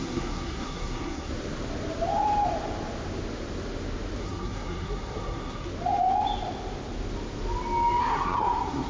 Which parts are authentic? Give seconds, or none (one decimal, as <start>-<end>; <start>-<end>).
1.3-4.2; 5.7-8.0